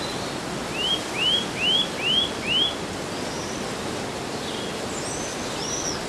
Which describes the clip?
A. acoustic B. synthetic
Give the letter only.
A